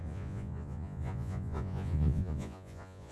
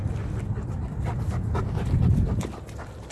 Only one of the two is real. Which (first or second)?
second